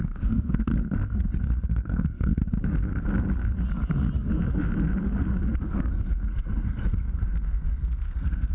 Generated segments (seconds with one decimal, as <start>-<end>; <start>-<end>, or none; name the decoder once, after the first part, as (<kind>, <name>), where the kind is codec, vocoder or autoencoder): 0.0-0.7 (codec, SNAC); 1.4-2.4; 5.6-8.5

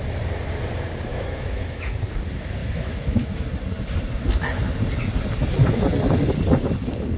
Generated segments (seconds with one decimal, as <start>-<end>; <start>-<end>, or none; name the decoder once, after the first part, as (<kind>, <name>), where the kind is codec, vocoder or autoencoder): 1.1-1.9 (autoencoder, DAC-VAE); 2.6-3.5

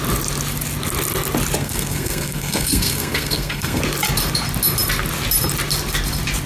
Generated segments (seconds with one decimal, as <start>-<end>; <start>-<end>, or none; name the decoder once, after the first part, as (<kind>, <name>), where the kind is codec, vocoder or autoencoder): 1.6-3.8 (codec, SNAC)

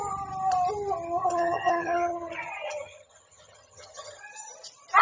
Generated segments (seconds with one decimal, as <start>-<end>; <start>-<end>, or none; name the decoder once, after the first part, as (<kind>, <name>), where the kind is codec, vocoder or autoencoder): 1.2-4.2 (vocoder, HiFi-GAN)